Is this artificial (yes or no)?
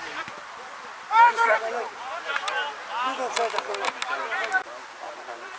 no